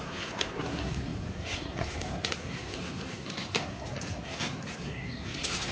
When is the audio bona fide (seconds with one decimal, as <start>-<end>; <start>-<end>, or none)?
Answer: none